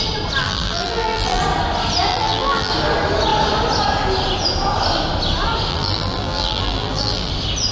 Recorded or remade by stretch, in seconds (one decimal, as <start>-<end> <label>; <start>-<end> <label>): 0.0-0.4 recorded; 0.4-1.4 remade; 1.4-2.1 recorded; 2.1-2.7 remade; 2.7-5.7 recorded; 5.7-7.3 remade; 7.3-7.7 recorded